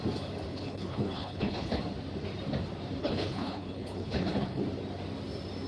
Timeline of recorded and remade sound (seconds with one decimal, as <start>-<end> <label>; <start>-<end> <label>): 0.0-0.5 recorded; 0.5-1.8 remade; 1.8-3.0 recorded; 3.0-4.6 remade; 4.6-5.7 recorded